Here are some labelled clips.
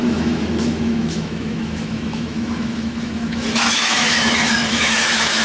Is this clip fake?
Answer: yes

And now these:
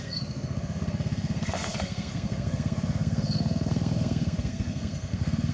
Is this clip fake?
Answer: yes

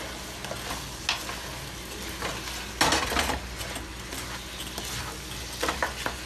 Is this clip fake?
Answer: no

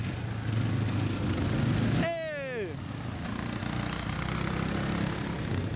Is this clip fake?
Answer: no